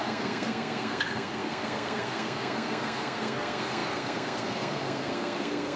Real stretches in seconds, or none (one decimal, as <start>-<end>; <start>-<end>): none